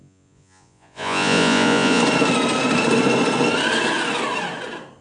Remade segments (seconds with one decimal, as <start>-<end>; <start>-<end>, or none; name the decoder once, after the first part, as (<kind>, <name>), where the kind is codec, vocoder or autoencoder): 0.0-2.0 (vocoder, Vocos)